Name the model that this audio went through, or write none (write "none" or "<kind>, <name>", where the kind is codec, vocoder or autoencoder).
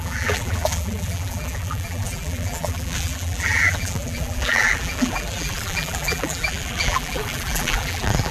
vocoder, BigVGAN v2